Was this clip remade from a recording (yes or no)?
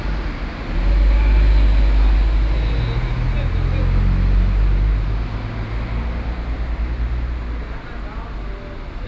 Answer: no